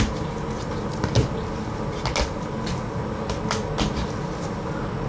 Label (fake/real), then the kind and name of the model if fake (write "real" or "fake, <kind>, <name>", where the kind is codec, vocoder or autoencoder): real